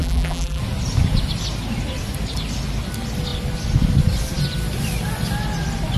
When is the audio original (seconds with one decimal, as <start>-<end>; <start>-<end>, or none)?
0.6-6.0

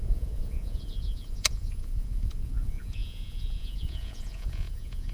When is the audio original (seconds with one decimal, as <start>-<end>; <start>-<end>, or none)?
none

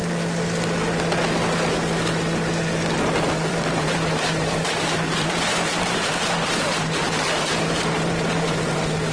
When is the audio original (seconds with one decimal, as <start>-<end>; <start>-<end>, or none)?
0.0-3.5

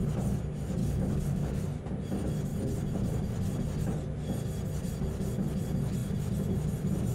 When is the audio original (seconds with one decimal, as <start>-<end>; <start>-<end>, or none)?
0.0-0.8; 1.6-7.1

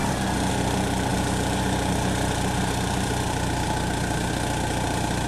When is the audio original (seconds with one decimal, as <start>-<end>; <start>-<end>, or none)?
0.0-1.1; 4.3-5.3

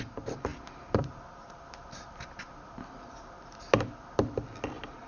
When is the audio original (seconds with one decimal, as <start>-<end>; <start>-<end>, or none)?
0.0-5.1

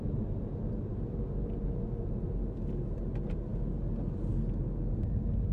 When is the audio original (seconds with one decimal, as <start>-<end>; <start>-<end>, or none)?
0.0-5.5

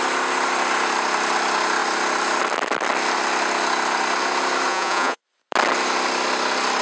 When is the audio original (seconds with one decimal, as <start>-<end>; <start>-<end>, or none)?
0.0-4.7; 5.2-6.8